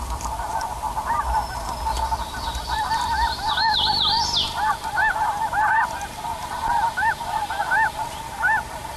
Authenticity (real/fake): fake